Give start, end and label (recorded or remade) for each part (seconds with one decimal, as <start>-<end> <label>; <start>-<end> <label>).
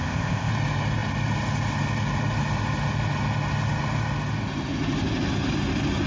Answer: 0.0-0.5 remade; 0.5-6.1 recorded